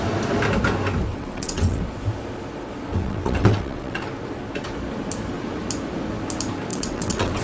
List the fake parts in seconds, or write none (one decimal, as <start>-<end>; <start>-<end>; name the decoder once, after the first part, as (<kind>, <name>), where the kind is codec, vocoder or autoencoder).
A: 1.1-1.8 (vocoder, WaveNeXt); 2.9-4.0; 6.7-7.4